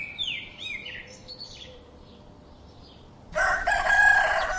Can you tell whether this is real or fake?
real